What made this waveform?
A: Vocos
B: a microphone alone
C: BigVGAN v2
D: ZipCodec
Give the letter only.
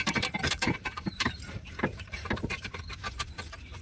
C